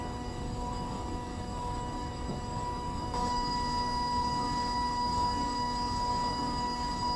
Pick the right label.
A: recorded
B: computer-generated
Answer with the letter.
B